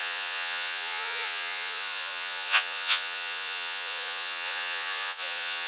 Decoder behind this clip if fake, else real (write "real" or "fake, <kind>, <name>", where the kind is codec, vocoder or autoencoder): fake, vocoder, Vocos